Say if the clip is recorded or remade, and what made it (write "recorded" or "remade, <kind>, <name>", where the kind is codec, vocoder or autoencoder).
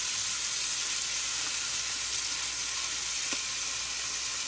recorded